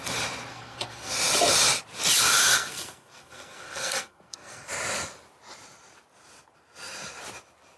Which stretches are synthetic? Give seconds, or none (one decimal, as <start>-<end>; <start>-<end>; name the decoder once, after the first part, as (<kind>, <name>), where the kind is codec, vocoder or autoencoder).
0.5-1.1 (codec, SNAC); 2.5-4.7